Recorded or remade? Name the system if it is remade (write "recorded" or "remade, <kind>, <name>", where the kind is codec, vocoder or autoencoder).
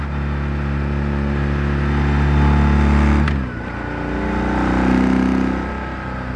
recorded